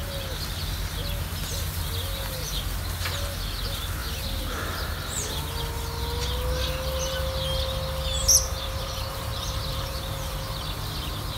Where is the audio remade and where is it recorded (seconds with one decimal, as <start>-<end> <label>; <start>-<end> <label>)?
0.0-8.2 recorded; 8.2-10.4 remade; 10.4-11.4 recorded